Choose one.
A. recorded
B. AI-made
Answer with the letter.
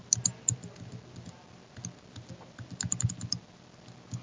A